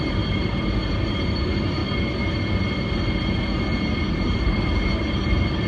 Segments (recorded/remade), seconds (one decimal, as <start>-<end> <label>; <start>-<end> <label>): 0.0-1.8 remade; 1.8-4.1 recorded; 4.1-5.7 remade